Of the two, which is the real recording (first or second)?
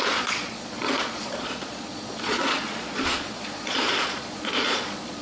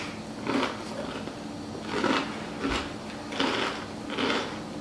second